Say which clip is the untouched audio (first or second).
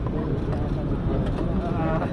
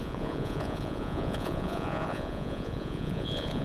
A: first